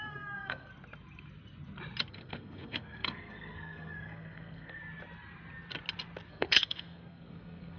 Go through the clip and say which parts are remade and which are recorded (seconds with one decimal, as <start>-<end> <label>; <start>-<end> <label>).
0.0-0.7 remade; 0.7-2.1 recorded; 2.1-4.8 remade; 4.8-6.3 recorded; 6.3-7.8 remade